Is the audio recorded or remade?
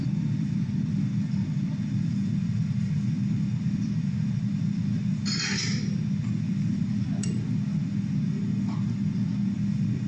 remade